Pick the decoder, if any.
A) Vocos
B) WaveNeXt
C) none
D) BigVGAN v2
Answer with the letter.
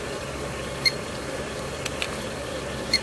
D